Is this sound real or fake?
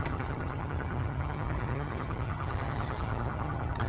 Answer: fake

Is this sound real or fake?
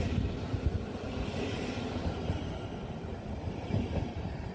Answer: real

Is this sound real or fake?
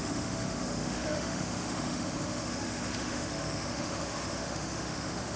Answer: fake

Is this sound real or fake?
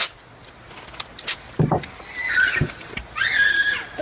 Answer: real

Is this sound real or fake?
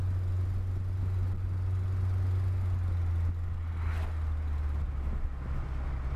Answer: real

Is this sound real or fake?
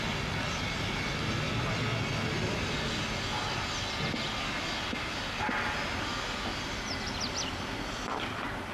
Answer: real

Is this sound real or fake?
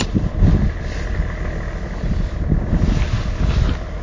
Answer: real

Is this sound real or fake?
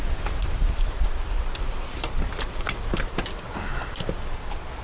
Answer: real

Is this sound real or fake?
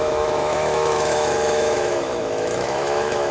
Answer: fake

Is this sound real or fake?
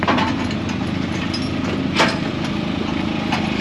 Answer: real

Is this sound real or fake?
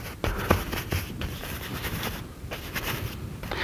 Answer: real